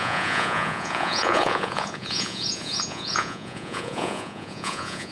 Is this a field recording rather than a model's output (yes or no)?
no